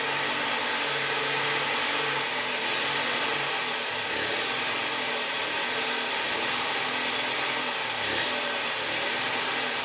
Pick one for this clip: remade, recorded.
recorded